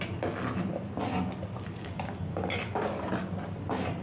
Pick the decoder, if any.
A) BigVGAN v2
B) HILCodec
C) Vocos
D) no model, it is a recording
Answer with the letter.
D